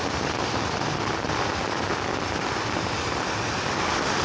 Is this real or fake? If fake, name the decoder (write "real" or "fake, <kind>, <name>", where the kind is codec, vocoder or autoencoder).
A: fake, vocoder, BigVGAN v2